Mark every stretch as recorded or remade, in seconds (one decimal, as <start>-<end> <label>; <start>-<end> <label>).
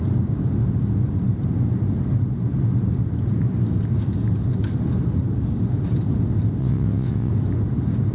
0.0-6.6 recorded; 6.6-7.3 remade; 7.3-8.1 recorded